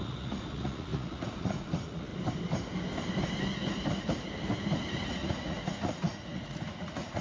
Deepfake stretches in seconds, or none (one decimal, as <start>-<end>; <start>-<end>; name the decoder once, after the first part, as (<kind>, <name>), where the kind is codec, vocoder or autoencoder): 0.0-2.1 (vocoder, Vocos); 5.1-7.2